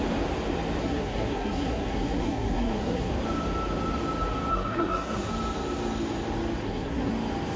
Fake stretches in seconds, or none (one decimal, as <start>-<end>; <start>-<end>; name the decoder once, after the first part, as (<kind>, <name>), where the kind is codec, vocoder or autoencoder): 0.8-3.1 (codec, SNAC); 4.5-5.3; 6.6-7.1